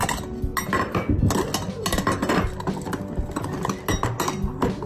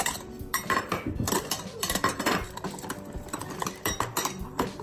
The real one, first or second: first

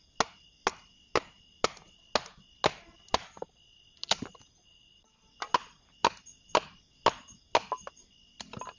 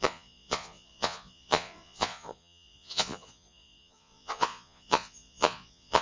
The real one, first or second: first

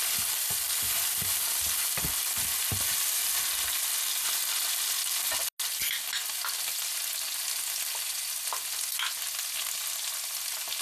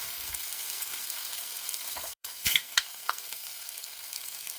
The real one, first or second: first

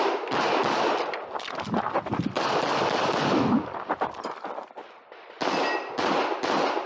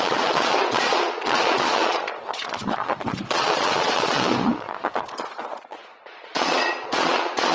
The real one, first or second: first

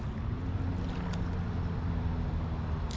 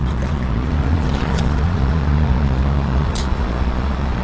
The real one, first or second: first